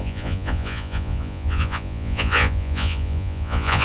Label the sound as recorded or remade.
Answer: remade